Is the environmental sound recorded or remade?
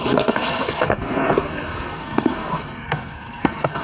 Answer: remade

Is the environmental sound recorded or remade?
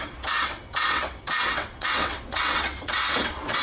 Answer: remade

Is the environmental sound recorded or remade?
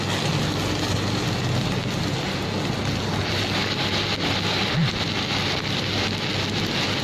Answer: recorded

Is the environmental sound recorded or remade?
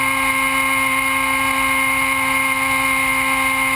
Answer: recorded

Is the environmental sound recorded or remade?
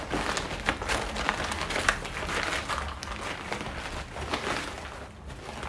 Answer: recorded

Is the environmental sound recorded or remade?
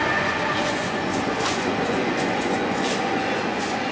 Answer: remade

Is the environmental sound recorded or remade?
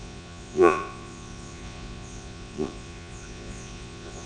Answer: remade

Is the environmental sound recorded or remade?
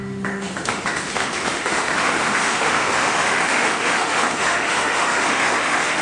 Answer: remade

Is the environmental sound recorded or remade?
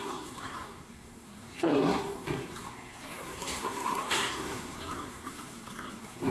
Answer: remade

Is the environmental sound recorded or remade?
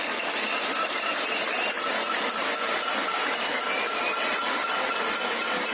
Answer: recorded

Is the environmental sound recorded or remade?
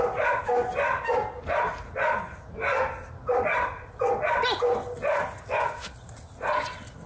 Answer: recorded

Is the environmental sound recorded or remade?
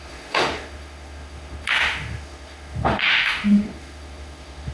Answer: remade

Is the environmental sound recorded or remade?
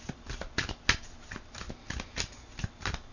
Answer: recorded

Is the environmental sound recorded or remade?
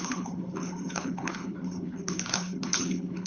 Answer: remade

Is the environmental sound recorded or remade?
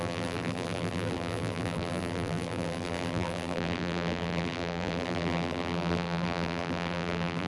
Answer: remade